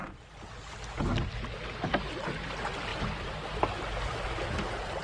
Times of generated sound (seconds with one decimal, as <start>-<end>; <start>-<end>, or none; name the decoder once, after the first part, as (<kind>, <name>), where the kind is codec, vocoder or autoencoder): none